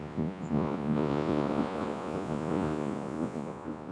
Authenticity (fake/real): fake